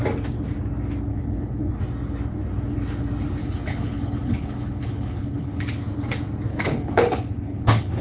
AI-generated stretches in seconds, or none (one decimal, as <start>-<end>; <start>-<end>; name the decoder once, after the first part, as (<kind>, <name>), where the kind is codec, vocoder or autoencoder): 1.1-1.8 (codec, HILCodec); 3.4-5.6; 6.5-8.0